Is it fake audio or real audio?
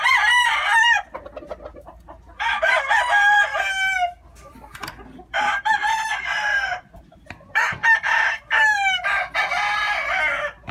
real